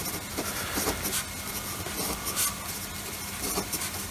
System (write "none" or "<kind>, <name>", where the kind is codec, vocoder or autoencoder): none